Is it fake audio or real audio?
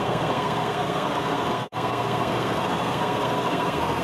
fake